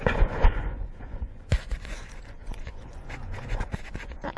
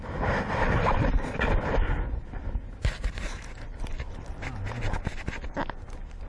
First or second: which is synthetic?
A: first